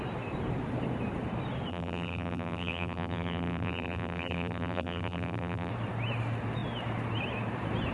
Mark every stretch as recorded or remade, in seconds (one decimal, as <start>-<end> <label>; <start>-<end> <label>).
0.0-1.7 recorded; 1.7-5.7 remade; 5.7-7.9 recorded